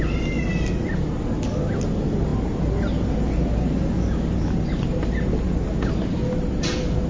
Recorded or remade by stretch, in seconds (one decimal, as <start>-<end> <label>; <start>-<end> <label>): 0.0-7.1 recorded